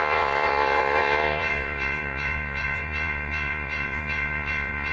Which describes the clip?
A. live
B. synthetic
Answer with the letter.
B